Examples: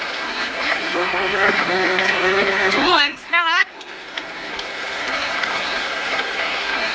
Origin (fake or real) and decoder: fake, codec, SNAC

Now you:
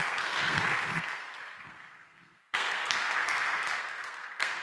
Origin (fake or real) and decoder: fake, codec, SNAC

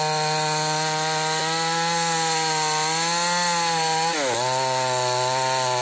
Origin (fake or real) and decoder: real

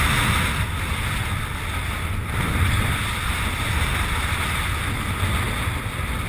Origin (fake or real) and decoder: real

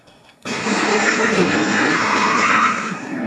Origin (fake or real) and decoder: fake, codec, SNAC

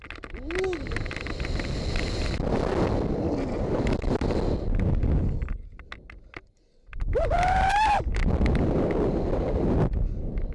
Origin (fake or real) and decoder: real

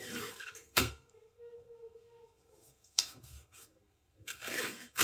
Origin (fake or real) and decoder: fake, codec, SNAC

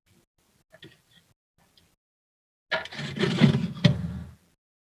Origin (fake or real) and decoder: real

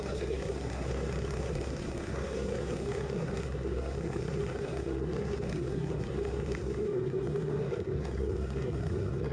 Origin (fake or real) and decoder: fake, codec, SNAC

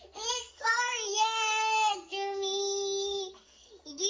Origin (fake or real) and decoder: fake, codec, SNAC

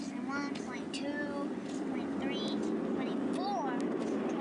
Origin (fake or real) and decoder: real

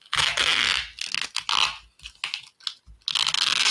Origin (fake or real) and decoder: real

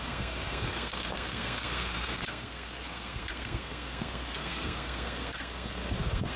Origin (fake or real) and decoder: fake, codec, SNAC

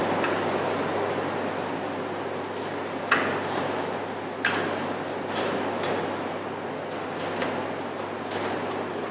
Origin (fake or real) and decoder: real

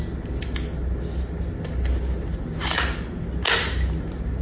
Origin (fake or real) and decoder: real